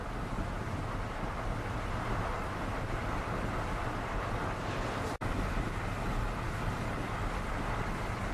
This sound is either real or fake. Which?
real